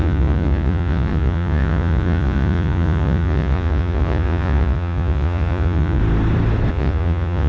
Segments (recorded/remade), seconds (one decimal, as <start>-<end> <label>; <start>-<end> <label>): 0.0-6.0 remade; 6.0-6.7 recorded; 6.7-7.5 remade